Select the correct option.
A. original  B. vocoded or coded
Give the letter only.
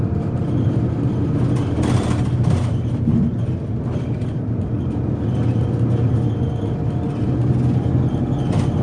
A